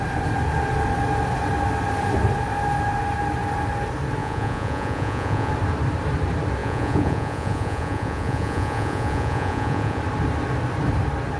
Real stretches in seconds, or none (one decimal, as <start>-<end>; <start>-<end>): 0.0-4.2; 5.5-6.6; 10.0-11.4